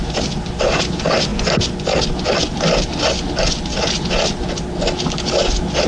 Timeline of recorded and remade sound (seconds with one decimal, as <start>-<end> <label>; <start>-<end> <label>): 0.0-5.9 recorded